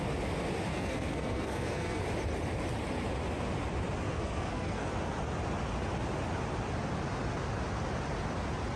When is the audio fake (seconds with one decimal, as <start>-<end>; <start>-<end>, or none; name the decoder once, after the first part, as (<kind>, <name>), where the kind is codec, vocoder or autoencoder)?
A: 0.7-2.0 (codec, SNAC); 4.1-4.9